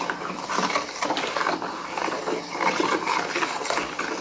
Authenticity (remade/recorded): recorded